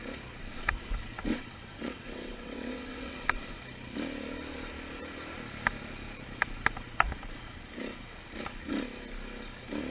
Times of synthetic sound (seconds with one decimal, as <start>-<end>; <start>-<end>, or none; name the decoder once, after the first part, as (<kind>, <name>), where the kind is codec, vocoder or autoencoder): 0.4-3.6 (vocoder, WaveNeXt)